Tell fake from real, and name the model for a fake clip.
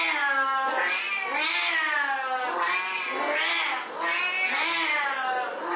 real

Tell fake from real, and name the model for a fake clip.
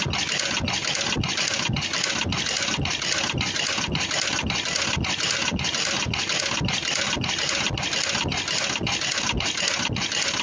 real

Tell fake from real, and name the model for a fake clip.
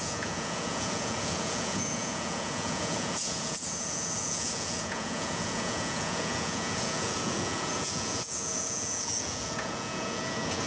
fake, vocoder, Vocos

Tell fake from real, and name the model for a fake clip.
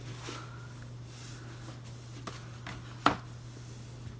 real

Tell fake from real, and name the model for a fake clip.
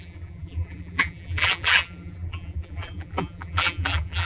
fake, vocoder, BigVGAN v2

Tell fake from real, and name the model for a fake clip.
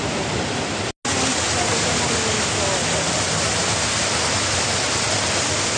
real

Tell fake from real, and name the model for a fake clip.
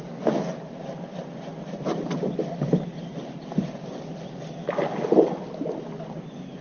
real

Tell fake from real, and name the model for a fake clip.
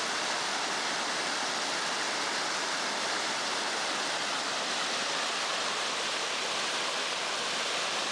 fake, vocoder, BigVGAN v2